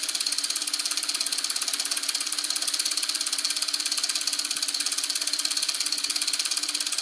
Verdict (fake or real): real